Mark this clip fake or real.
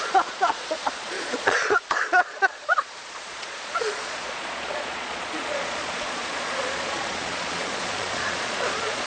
fake